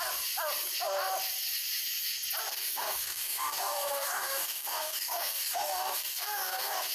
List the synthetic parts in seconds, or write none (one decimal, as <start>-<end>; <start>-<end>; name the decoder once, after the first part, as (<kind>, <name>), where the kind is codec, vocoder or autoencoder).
2.5-6.9 (codec, DAC)